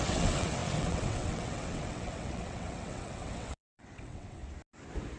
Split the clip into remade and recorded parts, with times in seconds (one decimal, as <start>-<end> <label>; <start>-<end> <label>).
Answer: 0.0-4.4 remade; 4.4-5.2 recorded

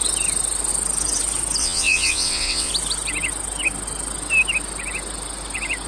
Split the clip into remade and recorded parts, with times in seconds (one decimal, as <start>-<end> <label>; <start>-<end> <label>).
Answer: 0.0-1.6 recorded; 1.6-2.7 remade; 2.7-5.9 recorded